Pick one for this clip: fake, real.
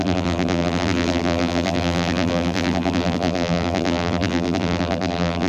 fake